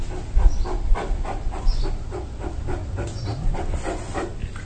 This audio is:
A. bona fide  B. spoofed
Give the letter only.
A